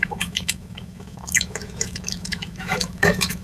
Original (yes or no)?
no